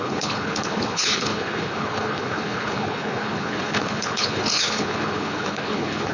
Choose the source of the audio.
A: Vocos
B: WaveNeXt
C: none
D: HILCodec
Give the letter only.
D